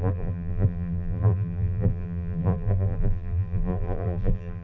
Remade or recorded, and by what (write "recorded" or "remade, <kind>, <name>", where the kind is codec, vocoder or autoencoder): remade, vocoder, BigVGAN v2